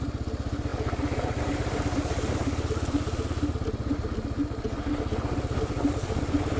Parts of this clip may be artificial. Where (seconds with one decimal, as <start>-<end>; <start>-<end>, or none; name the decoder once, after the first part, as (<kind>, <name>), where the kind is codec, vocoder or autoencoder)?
none